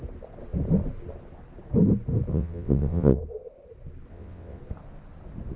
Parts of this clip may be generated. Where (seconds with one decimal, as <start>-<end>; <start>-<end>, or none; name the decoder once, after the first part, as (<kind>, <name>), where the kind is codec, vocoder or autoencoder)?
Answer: 2.3-3.2 (vocoder, WaveNeXt); 4.1-4.6